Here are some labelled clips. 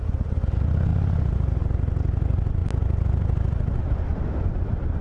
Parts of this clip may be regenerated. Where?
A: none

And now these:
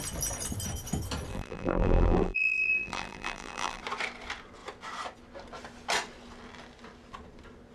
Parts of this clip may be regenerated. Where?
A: 1.3-3.8 (vocoder, BigVGAN v2)

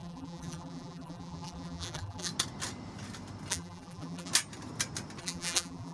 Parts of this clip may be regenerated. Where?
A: 0.0-2.3 (vocoder, BigVGAN v2); 3.5-4.3; 5.2-5.9

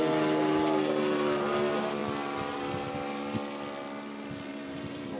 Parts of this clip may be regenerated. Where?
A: 4.5-5.2 (vocoder, BigVGAN v2)

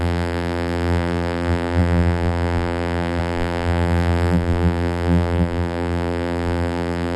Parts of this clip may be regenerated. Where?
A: 0.0-7.2 (vocoder, BigVGAN v2)